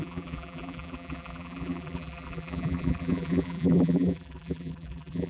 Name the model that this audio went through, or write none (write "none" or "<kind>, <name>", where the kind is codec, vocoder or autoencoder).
vocoder, BigVGAN v2